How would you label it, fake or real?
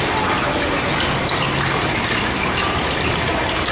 real